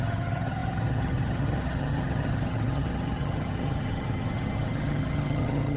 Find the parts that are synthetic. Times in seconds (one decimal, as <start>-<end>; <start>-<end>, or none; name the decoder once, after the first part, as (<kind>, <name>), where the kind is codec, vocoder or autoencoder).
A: 0.0-5.8 (vocoder, HiFi-GAN)